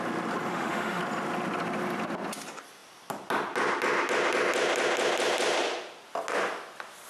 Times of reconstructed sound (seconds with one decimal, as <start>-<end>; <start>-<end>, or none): 0.5-1.0